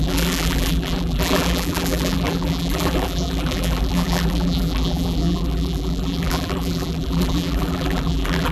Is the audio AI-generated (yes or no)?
yes